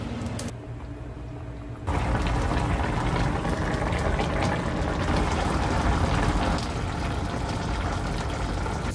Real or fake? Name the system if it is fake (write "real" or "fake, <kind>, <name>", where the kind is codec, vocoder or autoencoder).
real